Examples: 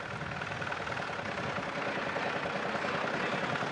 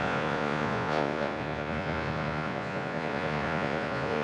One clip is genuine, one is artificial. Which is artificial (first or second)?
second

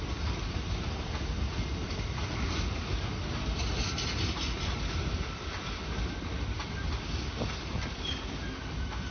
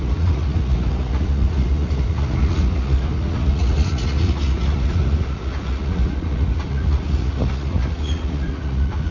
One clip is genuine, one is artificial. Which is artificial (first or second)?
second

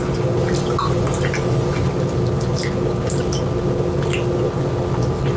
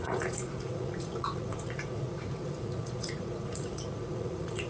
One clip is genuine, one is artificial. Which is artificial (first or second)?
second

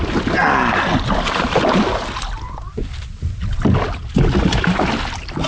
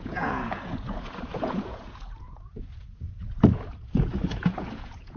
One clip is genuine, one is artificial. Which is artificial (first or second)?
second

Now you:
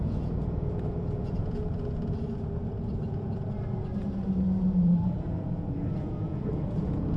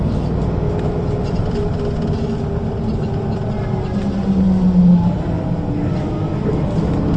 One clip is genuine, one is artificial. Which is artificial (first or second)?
first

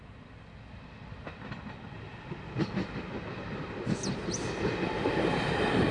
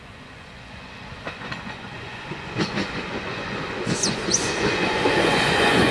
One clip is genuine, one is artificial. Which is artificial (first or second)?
second